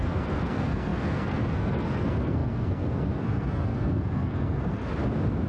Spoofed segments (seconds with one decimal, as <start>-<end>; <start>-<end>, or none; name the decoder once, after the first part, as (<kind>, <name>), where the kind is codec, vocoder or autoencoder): 0.0-4.9 (codec, SNAC)